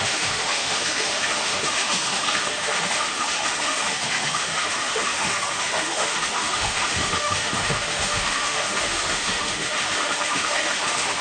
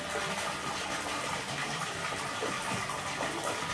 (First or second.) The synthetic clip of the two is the first